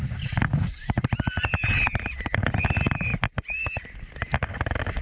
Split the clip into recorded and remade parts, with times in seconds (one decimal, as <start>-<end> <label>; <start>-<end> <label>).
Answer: 0.0-5.0 recorded